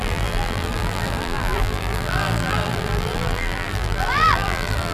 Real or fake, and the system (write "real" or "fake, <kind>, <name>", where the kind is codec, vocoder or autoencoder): fake, vocoder, BigVGAN v2